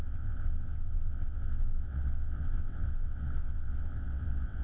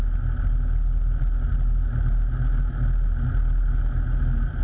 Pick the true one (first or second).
second